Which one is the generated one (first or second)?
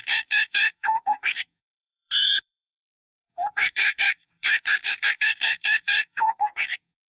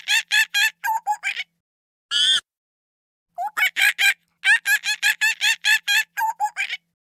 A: first